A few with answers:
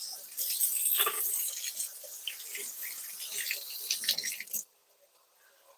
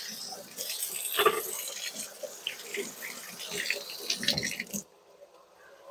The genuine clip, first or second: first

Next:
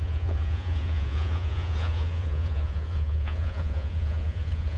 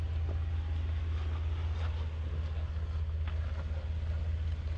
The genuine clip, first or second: second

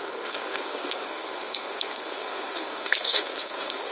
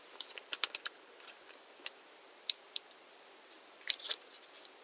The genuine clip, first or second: second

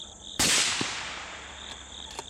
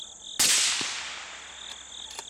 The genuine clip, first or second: second